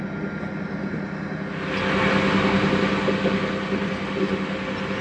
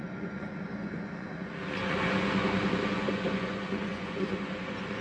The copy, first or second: second